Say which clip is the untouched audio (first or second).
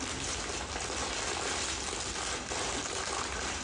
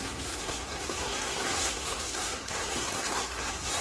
first